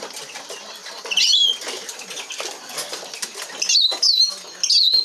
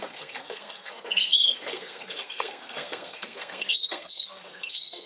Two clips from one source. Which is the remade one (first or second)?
second